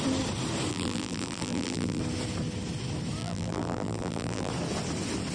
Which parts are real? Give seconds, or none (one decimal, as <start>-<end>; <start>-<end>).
0.0-0.7; 2.0-3.2; 4.5-5.3